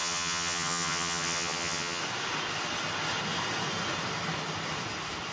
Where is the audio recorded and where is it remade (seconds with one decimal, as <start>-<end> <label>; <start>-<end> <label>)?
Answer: 0.0-2.0 remade; 2.0-5.3 recorded